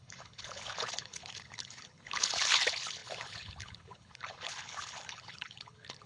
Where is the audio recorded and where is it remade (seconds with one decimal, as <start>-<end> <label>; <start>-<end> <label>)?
0.0-6.1 remade